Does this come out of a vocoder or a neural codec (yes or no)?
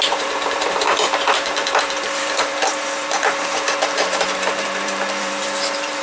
yes